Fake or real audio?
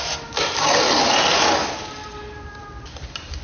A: real